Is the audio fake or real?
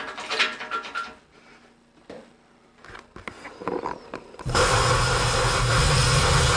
real